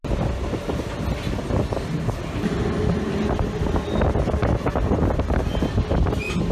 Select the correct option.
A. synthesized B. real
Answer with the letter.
B